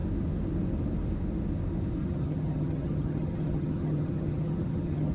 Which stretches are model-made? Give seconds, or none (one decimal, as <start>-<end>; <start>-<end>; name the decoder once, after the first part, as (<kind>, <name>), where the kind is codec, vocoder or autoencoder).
2.0-5.1 (vocoder, HiFi-GAN)